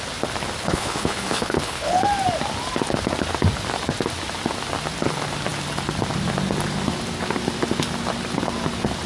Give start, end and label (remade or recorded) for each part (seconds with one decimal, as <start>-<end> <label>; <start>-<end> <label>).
0.0-0.6 recorded; 0.6-2.0 remade; 2.0-9.1 recorded